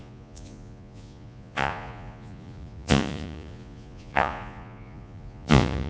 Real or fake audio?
fake